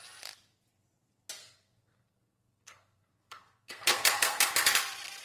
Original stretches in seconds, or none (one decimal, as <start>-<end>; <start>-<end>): 0.0-1.4; 4.5-5.2